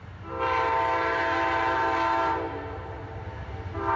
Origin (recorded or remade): recorded